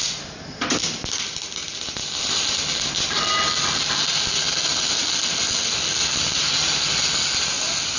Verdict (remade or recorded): recorded